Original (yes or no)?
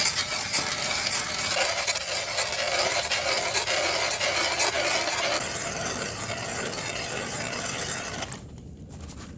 yes